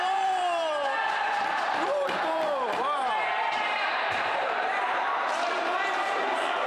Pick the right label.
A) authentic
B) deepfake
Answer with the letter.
B